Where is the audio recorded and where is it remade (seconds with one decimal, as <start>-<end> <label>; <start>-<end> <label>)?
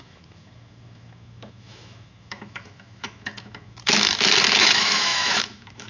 0.0-5.9 remade